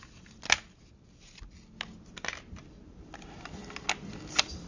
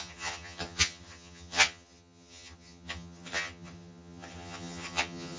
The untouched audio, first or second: first